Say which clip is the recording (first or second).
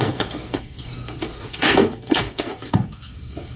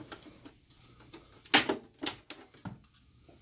second